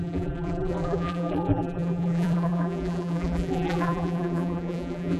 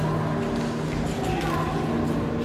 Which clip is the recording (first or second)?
second